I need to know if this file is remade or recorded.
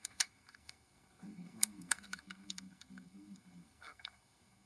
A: remade